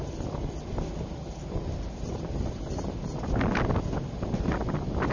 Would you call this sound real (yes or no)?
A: yes